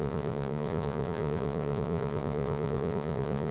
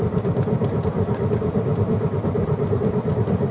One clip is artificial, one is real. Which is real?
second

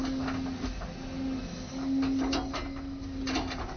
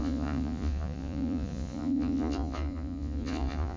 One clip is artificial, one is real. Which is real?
first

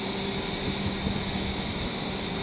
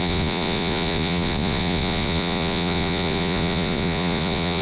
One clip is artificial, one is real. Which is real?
first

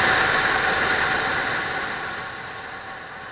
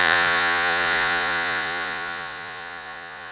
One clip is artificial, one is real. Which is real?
first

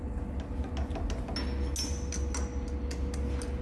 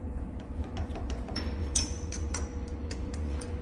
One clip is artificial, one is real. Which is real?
first